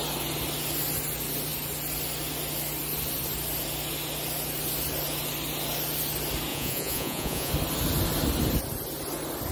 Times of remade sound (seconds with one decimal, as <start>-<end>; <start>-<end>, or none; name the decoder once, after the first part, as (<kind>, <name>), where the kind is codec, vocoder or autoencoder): 6.5-7.5 (vocoder, Vocos)